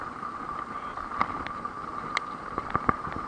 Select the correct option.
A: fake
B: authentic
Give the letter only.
B